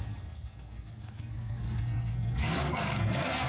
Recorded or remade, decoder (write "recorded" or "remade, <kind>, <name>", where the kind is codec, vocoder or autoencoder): remade, codec, SNAC